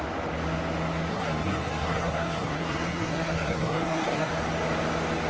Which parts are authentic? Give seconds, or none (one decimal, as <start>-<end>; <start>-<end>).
0.0-1.1; 4.3-5.3